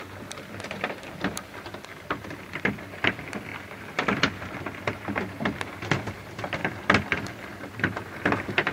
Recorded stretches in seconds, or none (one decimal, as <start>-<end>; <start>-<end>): 6.6-7.2